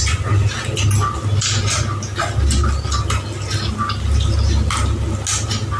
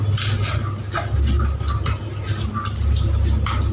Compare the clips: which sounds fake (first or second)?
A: second